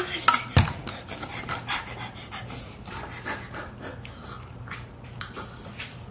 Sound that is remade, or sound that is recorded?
recorded